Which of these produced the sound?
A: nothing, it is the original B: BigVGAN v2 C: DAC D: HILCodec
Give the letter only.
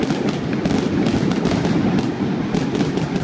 A